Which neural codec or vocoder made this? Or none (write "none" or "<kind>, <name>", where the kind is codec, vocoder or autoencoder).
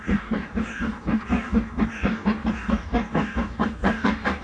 codec, DAC